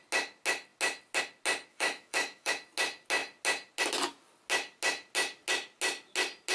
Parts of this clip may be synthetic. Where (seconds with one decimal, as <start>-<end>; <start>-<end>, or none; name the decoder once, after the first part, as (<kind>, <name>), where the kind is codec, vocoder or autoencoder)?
1.7-2.5 (autoencoder, DAC-VAE)